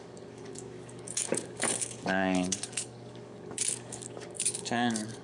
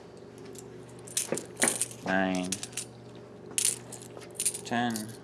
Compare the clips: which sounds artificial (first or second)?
first